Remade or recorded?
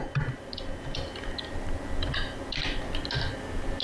recorded